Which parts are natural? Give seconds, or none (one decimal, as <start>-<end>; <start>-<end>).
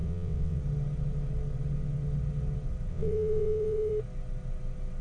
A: 0.6-2.9; 3.9-5.0